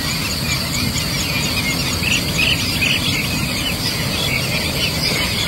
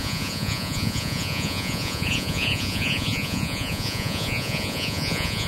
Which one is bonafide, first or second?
first